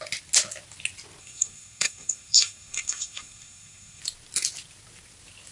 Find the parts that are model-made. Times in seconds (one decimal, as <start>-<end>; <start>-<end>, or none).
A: 1.2-4.0